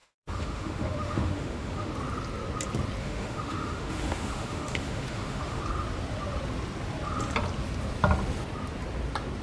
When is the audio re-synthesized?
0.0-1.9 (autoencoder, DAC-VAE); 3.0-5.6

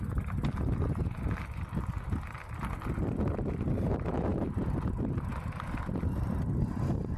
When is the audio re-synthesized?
none

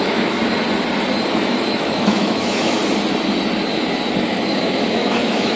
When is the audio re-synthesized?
0.0-0.4 (autoencoder, DAC-VAE); 1.3-2.8; 4.2-5.6

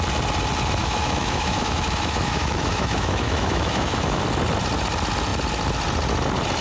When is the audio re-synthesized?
0.8-4.2 (autoencoder, DAC-VAE)